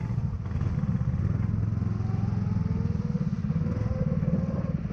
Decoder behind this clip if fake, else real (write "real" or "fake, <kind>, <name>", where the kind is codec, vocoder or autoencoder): real